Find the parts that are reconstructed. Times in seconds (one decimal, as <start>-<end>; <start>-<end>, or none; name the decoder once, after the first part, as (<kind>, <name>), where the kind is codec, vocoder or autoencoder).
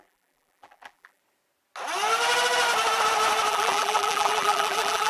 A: 0.0-1.2 (vocoder, BigVGAN v2); 3.5-5.1